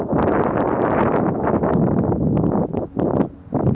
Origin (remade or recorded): recorded